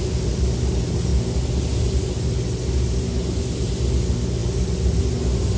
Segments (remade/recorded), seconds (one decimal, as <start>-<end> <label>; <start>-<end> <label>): 0.0-5.6 recorded